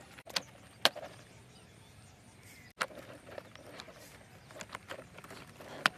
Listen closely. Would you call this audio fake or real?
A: real